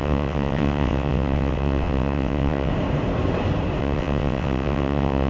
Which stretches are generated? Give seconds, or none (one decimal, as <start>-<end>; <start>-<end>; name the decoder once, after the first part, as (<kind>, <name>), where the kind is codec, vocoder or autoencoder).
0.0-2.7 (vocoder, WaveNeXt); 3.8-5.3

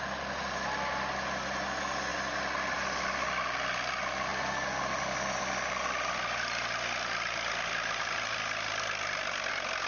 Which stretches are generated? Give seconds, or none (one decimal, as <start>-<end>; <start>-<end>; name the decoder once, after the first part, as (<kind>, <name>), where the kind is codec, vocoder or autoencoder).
none

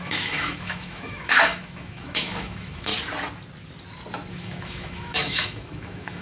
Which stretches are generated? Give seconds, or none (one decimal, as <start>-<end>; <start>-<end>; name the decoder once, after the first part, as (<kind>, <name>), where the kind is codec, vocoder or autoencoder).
0.0-2.9 (autoencoder, DAC-VAE); 4.3-6.2

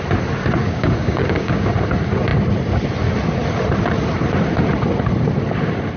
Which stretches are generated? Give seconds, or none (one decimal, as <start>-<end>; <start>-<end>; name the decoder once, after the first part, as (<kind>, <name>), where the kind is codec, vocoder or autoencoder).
0.6-1.7 (codec, DAC)